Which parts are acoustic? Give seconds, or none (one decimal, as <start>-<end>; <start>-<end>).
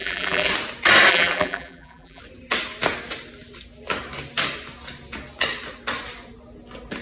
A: 0.5-1.1; 2.2-7.0